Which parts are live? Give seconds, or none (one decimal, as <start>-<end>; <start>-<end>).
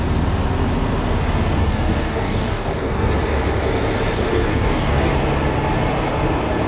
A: 0.0-1.6; 3.1-4.3; 5.1-6.7